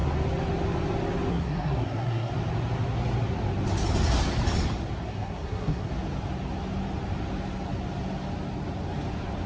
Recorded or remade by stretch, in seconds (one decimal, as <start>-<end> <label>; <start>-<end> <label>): 0.0-1.3 recorded; 1.3-2.3 remade; 2.3-5.1 recorded; 5.1-5.9 remade; 5.9-9.5 recorded